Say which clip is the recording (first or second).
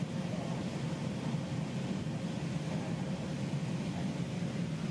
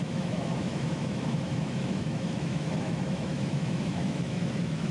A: first